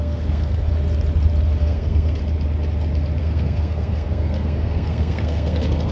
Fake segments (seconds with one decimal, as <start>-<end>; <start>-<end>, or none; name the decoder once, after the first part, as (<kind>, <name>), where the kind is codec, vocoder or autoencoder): 0.0-0.7 (codec, SNAC); 1.6-2.2; 3.2-5.9